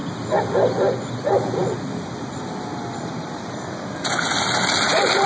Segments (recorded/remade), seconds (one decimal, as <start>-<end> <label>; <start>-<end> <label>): 0.0-5.3 recorded